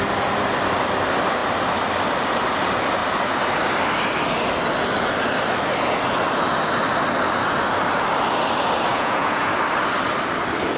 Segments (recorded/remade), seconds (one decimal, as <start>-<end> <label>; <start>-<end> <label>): 0.0-8.9 recorded; 8.9-9.5 remade; 9.5-10.8 recorded